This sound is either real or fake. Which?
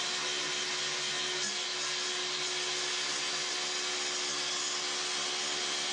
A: real